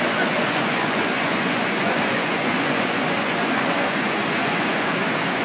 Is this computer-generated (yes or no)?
yes